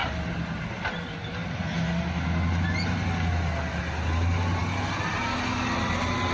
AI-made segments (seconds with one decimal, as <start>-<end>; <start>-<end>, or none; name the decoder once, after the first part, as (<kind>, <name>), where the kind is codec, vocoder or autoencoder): none